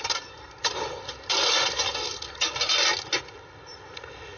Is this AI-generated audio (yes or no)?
no